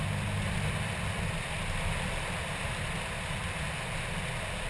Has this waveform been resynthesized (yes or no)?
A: no